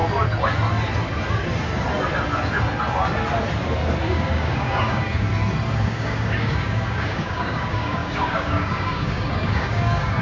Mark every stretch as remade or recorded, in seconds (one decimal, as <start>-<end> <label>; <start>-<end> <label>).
0.0-4.0 recorded; 4.0-5.3 remade; 5.3-5.8 recorded; 5.8-10.2 remade